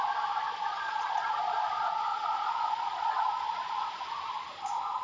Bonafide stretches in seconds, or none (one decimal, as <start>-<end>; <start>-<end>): 0.0-0.7; 1.3-2.1; 3.3-5.0